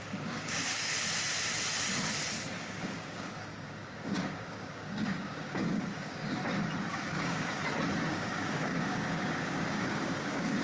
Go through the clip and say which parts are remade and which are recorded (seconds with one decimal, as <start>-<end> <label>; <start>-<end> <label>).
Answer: 0.0-0.9 remade; 0.9-2.6 recorded; 2.6-6.4 remade; 6.4-6.9 recorded; 6.9-7.6 remade; 7.6-8.1 recorded; 8.1-10.6 remade